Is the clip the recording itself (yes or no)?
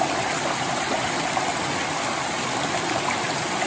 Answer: yes